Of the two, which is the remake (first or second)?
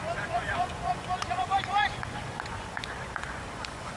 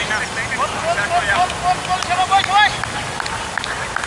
first